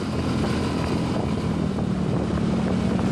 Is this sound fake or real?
real